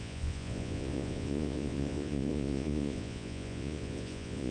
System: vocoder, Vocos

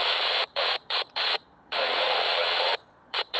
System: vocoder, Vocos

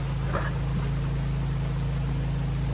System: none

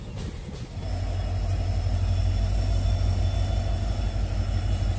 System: none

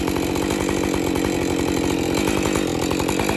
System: none